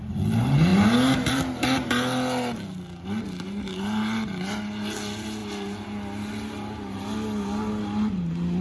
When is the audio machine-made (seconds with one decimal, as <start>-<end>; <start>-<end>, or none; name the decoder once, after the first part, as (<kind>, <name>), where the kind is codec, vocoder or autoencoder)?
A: none